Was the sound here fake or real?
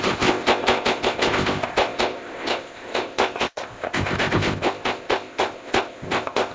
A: fake